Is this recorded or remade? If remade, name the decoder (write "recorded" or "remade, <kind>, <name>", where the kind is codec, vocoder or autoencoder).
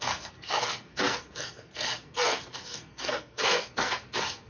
remade, codec, SNAC